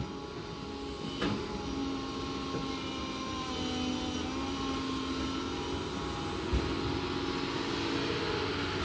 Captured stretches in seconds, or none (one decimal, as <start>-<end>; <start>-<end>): 0.0-8.8